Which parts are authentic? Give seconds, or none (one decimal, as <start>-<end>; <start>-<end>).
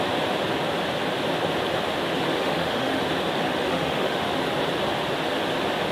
0.0-2.4; 3.0-3.5; 4.3-5.9